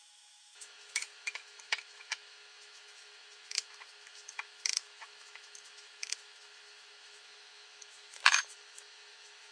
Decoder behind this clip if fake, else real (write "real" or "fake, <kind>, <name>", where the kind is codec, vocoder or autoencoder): fake, autoencoder, DAC-VAE